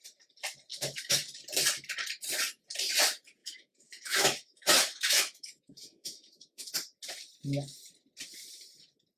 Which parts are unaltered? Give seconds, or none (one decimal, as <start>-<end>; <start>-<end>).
0.0-0.7; 1.2-3.4; 6.7-9.2